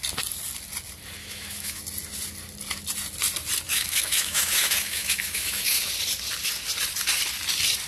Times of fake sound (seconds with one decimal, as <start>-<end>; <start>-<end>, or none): 1.2-1.8; 3.7-5.9